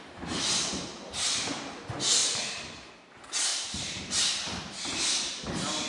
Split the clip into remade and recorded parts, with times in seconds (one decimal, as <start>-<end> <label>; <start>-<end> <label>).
0.0-2.2 recorded; 2.2-2.9 remade; 2.9-3.5 recorded; 3.5-4.1 remade; 4.1-5.9 recorded